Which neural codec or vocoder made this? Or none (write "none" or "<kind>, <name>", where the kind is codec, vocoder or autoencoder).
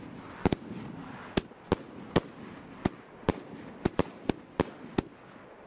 none